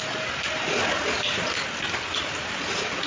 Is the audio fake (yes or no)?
no